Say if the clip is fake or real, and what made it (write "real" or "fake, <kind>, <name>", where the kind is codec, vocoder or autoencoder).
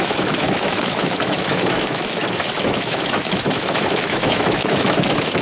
fake, autoencoder, DAC-VAE